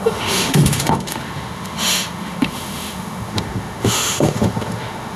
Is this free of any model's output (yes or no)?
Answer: no